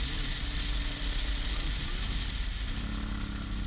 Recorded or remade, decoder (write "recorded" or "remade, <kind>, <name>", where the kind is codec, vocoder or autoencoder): recorded